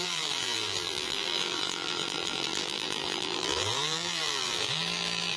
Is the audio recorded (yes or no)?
no